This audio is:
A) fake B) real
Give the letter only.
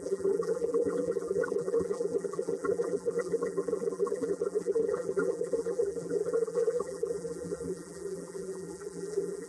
A